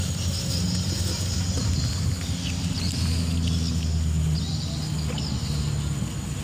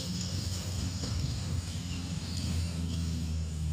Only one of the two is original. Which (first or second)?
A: first